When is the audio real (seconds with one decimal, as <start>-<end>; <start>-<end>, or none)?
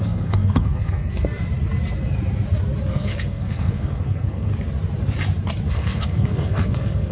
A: 1.1-2.9; 4.5-5.7